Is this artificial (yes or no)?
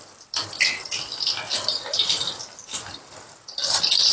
no